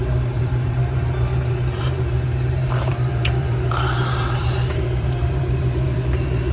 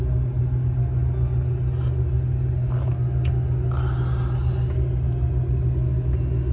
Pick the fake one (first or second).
first